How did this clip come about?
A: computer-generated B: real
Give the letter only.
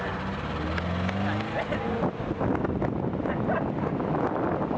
B